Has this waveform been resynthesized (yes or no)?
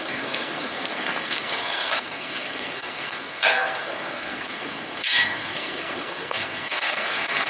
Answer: yes